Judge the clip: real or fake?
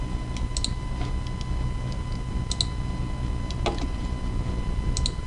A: real